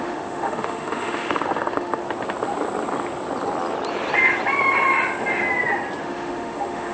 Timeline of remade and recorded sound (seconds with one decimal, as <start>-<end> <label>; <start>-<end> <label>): 0.0-2.0 remade; 2.0-6.0 recorded; 6.0-6.9 remade